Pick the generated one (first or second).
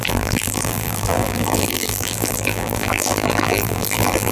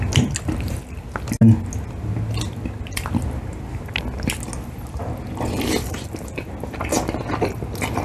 first